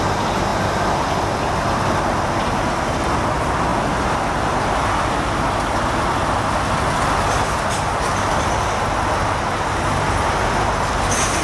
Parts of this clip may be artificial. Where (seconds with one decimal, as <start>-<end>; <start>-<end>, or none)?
none